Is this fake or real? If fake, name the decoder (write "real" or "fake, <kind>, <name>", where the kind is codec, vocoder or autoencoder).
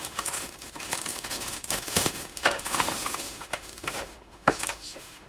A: fake, autoencoder, DAC-VAE